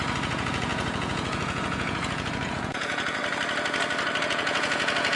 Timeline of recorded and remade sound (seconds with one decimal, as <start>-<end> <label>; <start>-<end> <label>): 0.0-3.2 remade; 3.2-4.2 recorded; 4.2-5.2 remade